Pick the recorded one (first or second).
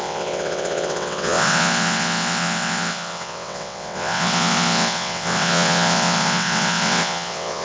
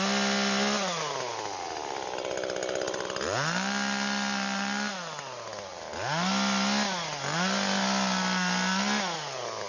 second